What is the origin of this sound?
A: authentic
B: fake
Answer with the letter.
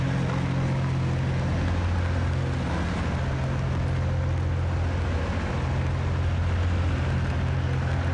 A